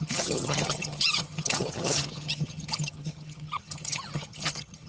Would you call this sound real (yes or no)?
no